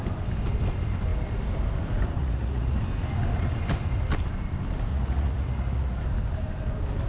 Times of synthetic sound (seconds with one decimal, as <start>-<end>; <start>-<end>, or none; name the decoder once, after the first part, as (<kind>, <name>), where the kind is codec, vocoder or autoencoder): 2.2-2.8 (vocoder, Vocos); 4.9-6.0